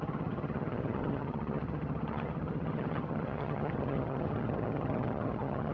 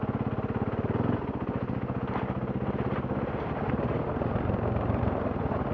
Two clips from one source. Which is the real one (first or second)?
second